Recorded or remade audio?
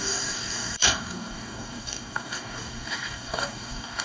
remade